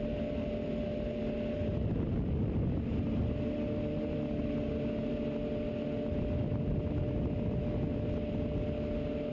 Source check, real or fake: real